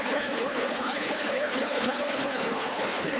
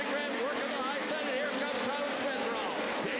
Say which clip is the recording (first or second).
second